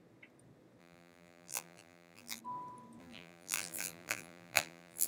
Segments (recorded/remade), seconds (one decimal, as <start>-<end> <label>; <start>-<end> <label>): 0.0-0.8 recorded; 0.8-2.4 remade; 2.4-3.0 recorded; 3.0-5.1 remade